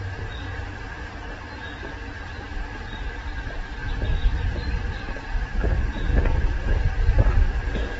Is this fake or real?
real